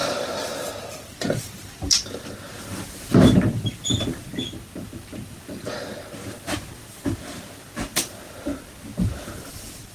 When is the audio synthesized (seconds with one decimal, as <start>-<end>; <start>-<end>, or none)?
0.0-2.5; 8.5-9.9

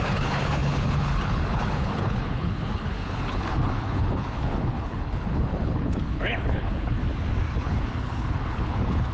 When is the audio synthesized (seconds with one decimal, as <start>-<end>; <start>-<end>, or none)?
0.0-7.0; 7.5-9.1

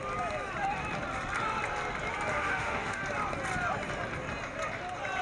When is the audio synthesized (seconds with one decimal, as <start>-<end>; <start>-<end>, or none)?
2.3-3.0

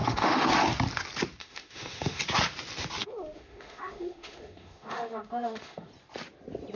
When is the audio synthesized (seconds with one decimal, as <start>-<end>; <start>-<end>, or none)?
0.0-0.5; 1.4-2.2; 3.0-5.9

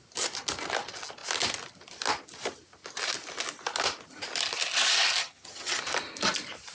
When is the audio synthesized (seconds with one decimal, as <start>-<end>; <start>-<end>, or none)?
5.2-5.8

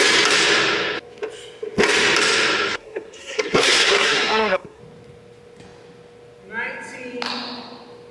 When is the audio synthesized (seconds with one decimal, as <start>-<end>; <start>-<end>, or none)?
2.7-4.8

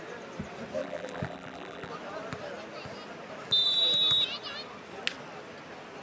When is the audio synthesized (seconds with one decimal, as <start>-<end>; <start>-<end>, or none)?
0.8-1.9

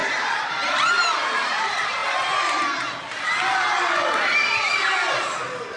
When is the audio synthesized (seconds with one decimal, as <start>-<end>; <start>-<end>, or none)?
0.0-2.0; 5.1-5.8